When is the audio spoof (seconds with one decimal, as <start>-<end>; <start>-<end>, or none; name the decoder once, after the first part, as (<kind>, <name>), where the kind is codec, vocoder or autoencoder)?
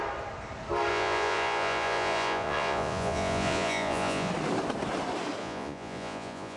0.9-4.3 (vocoder, Vocos); 5.4-6.6